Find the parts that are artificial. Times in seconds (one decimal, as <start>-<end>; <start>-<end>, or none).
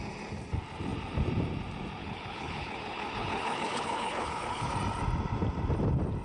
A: 2.0-4.7